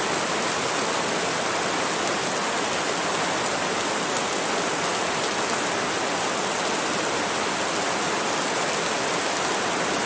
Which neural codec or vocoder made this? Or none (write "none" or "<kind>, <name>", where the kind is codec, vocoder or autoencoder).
none